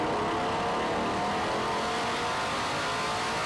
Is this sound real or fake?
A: real